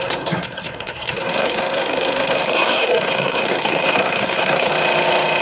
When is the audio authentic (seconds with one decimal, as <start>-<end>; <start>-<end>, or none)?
4.7-5.4